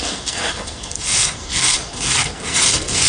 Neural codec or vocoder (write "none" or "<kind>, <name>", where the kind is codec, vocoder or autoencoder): codec, SNAC